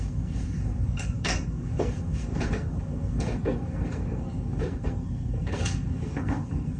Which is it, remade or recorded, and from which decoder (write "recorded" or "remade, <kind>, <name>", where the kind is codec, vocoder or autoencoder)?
remade, codec, SNAC